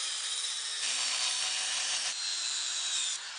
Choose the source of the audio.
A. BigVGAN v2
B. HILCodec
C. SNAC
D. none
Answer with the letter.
A